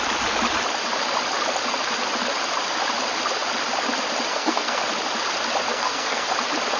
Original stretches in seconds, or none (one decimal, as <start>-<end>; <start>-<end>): 0.0-4.3; 4.8-5.7; 6.3-6.8